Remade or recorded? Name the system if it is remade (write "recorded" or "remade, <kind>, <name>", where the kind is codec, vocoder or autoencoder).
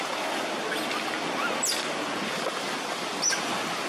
recorded